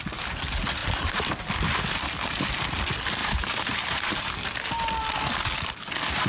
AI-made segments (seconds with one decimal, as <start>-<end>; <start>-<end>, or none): 0.8-1.3; 3.2-4.3